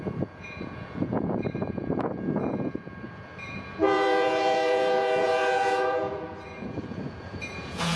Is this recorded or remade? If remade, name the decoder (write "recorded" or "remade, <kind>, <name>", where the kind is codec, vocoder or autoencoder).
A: remade, vocoder, Vocos